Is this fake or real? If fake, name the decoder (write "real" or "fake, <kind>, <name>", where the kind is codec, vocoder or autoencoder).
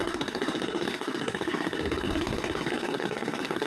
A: fake, codec, SNAC